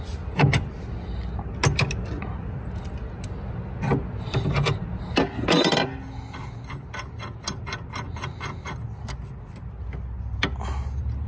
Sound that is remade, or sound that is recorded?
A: recorded